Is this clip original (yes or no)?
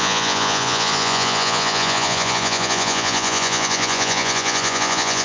no